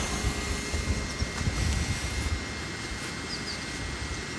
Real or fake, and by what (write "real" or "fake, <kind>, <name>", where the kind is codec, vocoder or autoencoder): real